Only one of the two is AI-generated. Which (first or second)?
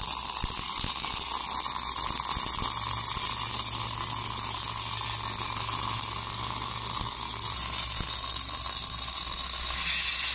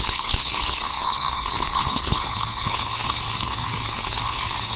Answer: second